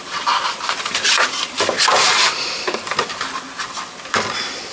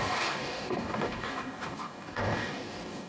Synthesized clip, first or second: second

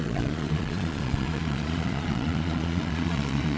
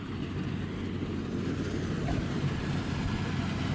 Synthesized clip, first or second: first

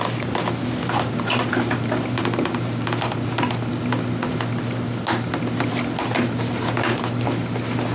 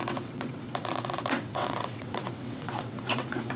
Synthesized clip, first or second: second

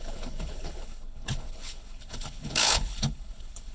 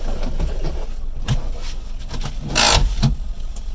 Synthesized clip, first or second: first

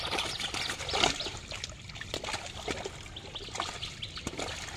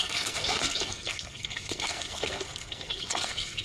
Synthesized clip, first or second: second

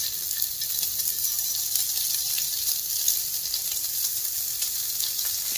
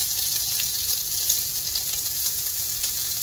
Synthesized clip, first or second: second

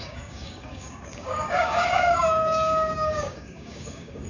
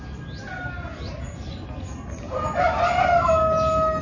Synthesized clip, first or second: first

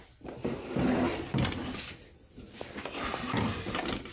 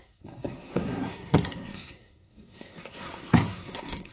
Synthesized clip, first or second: second